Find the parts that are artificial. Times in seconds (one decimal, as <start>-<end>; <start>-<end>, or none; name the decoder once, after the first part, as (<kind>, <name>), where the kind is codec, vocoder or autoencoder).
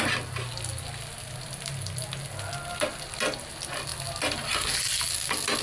none